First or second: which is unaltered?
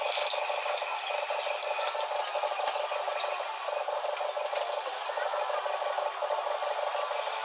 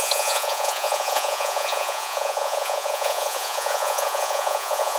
first